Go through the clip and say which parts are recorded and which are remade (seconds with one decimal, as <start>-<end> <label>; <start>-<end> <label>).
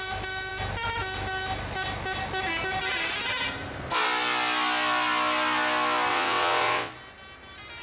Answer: 0.0-6.1 recorded; 6.1-6.9 remade; 6.9-7.8 recorded